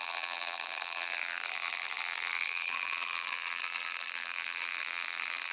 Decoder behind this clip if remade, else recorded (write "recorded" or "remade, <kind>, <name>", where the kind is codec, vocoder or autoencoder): remade, vocoder, BigVGAN v2